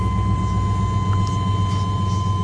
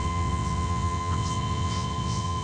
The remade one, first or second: second